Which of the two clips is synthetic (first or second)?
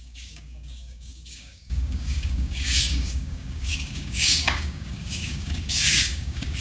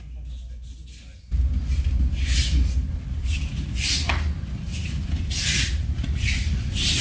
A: first